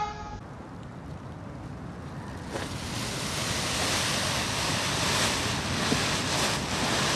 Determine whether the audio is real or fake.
real